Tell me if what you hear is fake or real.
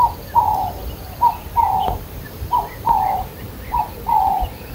fake